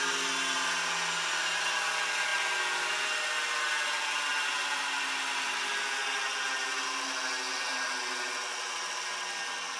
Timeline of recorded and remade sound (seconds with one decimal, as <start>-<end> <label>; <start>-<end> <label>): 0.0-9.8 recorded

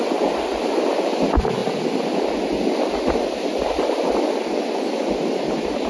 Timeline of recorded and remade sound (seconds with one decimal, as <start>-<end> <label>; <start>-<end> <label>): 0.0-5.9 recorded